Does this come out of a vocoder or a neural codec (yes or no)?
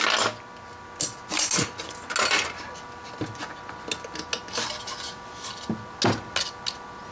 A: no